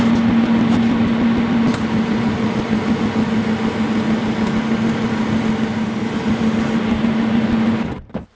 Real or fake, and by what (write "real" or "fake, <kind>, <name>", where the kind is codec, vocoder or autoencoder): real